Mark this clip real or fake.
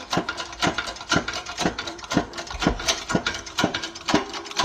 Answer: fake